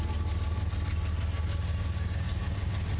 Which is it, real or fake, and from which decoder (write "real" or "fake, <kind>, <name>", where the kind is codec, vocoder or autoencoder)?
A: real